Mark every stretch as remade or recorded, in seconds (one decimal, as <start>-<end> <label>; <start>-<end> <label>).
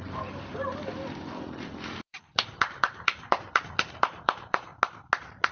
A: 0.0-4.7 remade; 4.7-5.5 recorded